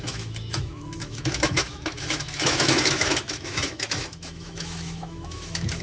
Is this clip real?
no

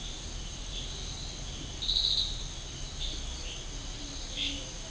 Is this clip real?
yes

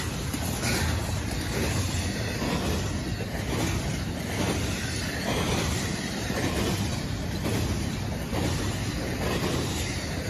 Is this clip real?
yes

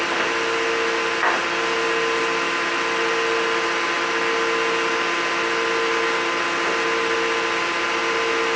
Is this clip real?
yes